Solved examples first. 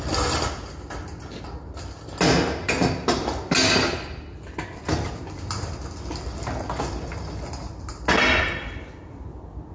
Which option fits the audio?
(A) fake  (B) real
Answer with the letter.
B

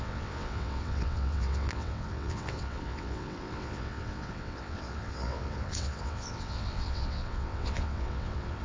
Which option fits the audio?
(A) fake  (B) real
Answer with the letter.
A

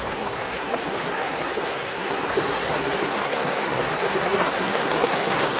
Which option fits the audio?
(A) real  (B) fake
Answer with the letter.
B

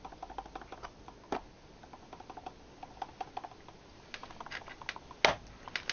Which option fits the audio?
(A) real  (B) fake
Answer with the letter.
A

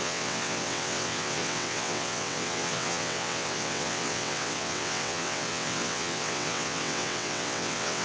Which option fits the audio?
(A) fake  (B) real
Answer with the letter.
A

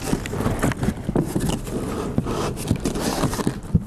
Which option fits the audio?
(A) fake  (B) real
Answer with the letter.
B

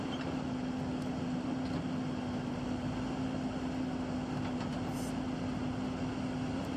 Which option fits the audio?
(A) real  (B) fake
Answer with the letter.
A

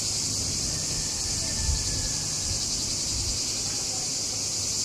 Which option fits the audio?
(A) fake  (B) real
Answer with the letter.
B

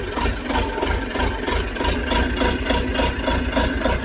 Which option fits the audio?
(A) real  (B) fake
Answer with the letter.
A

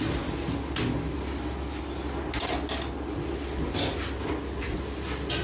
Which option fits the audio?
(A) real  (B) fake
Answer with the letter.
A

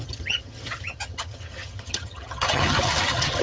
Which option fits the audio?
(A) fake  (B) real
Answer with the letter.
A